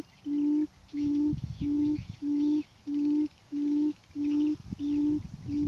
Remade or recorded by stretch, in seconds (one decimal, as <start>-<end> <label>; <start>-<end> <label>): 0.0-0.8 recorded; 0.8-4.1 remade; 4.1-5.7 recorded